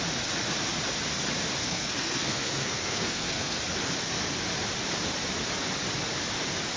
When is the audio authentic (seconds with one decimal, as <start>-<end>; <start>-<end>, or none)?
0.0-1.6; 3.6-6.8